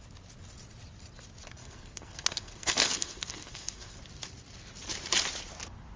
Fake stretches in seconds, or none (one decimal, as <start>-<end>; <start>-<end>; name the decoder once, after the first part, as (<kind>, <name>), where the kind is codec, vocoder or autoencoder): 1.6-4.0 (codec, SNAC)